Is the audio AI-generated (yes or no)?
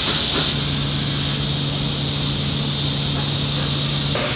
no